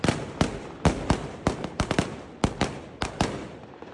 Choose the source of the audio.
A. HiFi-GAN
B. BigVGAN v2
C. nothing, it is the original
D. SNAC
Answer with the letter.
B